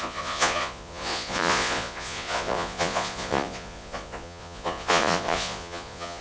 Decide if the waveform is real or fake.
fake